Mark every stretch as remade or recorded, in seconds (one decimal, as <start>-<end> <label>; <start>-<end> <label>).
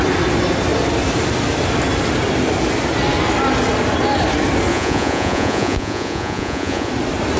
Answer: 0.0-4.7 recorded; 4.7-6.9 remade; 6.9-7.4 recorded